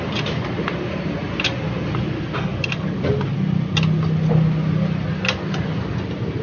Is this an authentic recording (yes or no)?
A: yes